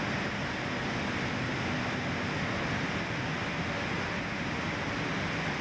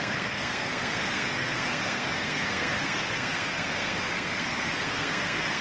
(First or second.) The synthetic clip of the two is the second